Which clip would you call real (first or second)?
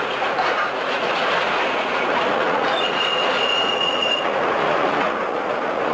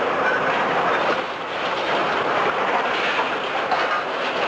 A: second